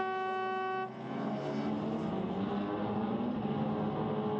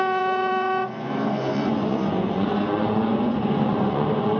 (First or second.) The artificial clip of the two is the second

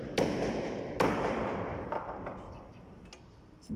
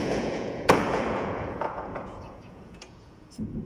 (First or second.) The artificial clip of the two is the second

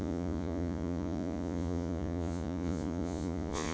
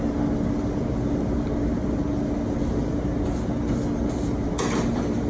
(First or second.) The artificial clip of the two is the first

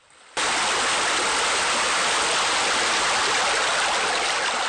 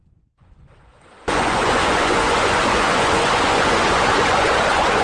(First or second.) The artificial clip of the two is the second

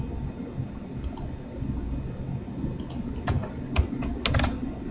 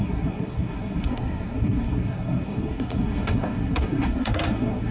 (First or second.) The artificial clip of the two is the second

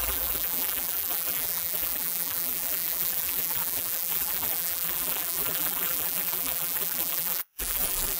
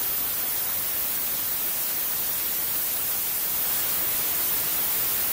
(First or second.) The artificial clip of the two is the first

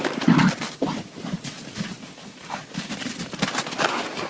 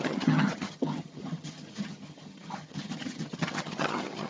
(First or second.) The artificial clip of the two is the second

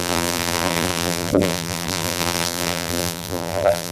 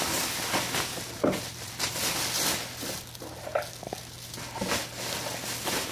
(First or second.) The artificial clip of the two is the first